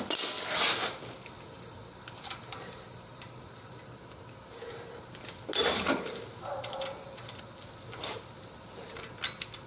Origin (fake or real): real